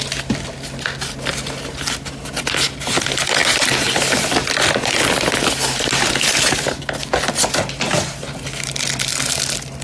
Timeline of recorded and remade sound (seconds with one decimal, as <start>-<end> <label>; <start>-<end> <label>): 0.0-9.8 recorded